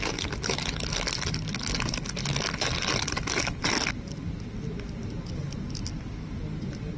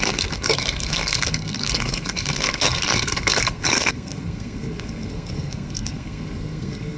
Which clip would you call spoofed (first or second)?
second